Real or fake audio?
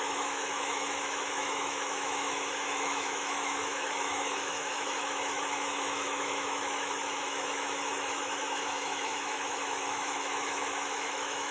fake